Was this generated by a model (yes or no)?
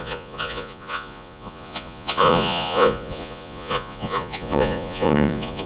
yes